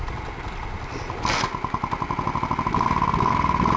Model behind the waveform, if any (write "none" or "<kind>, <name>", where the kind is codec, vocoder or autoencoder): none